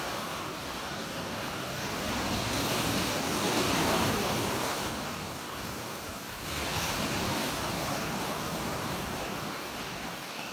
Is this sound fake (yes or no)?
yes